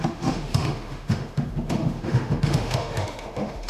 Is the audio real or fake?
fake